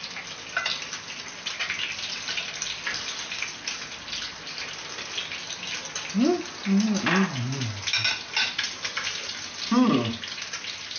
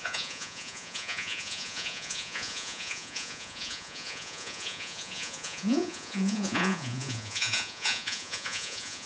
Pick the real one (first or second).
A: first